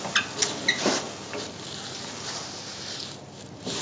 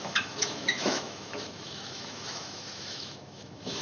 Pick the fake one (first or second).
second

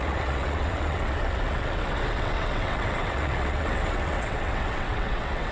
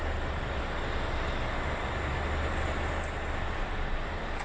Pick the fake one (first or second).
first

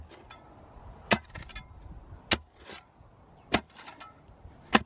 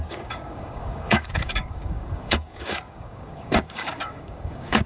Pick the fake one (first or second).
second